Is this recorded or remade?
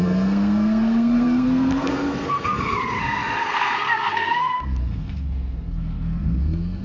remade